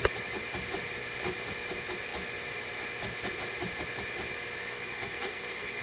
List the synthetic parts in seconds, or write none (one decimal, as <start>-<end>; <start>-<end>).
4.6-5.8